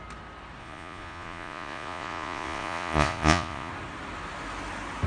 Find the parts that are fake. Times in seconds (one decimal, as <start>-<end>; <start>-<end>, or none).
0.6-3.7